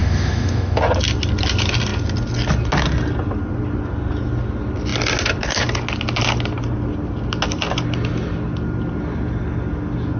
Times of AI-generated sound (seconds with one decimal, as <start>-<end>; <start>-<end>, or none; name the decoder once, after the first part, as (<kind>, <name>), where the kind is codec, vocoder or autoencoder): 0.0-0.8 (autoencoder, DAC-VAE)